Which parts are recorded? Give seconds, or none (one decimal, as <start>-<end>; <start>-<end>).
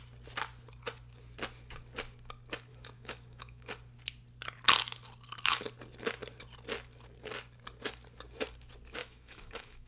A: 0.0-2.7; 3.7-9.0